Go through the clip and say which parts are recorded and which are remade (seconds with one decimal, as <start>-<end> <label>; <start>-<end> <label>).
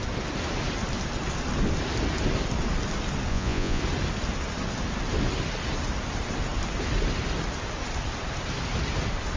0.0-3.3 recorded; 3.3-3.8 remade; 3.8-9.4 recorded